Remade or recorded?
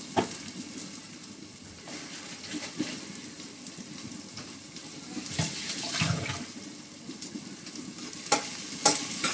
recorded